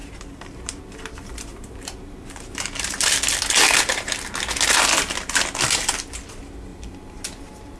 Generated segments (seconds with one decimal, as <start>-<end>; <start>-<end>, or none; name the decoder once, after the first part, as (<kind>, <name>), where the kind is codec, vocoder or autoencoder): 0.0-0.8 (vocoder, BigVGAN v2); 1.5-3.1; 6.7-7.8